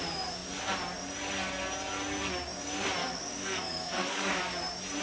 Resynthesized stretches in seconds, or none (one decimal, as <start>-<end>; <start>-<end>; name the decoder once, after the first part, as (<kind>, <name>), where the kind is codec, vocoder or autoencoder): 3.0-4.4 (codec, DAC)